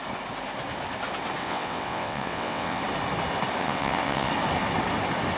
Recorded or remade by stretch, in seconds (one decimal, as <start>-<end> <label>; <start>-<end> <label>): 0.0-1.4 recorded; 1.4-2.8 remade; 2.8-3.6 recorded; 3.6-4.3 remade; 4.3-5.4 recorded